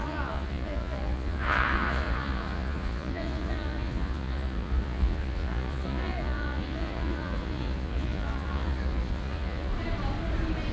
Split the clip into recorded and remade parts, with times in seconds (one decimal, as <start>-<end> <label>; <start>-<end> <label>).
0.0-9.7 remade; 9.7-10.7 recorded